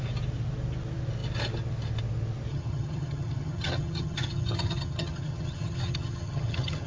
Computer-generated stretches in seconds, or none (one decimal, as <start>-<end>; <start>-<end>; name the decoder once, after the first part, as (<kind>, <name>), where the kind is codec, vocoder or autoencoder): 2.5-6.9 (vocoder, HiFi-GAN)